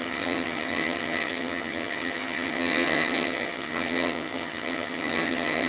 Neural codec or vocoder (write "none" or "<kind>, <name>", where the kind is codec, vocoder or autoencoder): vocoder, HiFi-GAN